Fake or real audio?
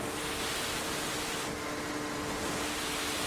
real